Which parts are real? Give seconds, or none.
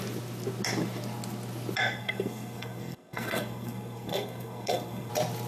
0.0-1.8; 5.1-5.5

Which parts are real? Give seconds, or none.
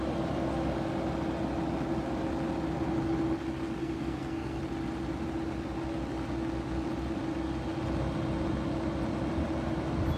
0.0-3.8; 4.6-10.2